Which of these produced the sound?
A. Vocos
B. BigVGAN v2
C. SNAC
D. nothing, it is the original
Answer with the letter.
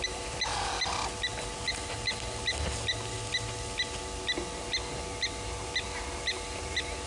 D